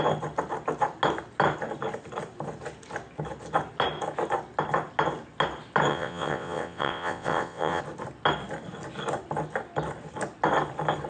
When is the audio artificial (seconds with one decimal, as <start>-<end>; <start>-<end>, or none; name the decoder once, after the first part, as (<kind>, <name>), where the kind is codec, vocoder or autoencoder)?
5.9-7.8 (vocoder, WaveNeXt)